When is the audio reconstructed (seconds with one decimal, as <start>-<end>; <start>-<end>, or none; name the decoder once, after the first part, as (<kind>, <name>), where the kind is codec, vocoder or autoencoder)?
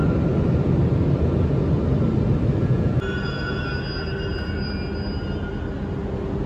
2.6-3.6 (vocoder, Vocos)